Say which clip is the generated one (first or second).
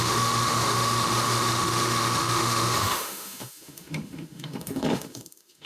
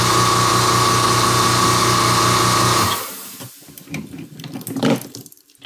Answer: first